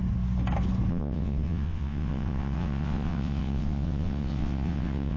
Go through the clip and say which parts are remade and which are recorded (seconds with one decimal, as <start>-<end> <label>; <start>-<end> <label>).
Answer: 0.0-0.9 recorded; 0.9-5.2 remade